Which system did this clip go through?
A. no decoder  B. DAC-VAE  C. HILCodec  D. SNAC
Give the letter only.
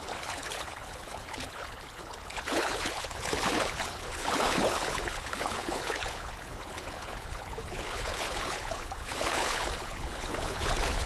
C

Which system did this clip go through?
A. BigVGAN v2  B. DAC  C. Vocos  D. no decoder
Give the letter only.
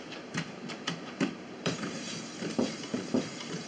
A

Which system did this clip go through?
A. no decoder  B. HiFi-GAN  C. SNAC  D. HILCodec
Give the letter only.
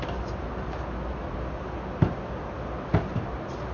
A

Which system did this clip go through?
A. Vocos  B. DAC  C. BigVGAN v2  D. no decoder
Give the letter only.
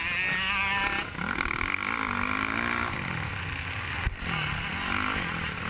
D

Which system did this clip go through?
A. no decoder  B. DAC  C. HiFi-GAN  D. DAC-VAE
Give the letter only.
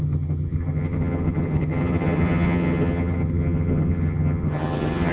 C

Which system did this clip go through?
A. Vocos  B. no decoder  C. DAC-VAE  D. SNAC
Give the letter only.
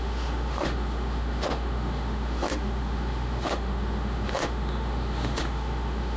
C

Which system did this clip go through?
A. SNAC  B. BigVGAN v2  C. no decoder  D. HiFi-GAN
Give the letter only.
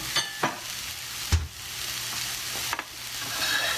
C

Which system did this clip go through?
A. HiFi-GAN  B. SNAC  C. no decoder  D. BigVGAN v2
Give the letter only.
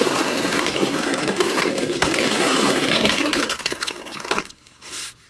B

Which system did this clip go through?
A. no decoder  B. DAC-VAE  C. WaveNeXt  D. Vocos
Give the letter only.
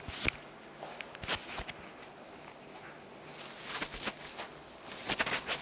A